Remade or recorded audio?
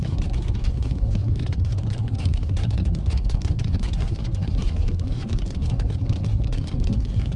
remade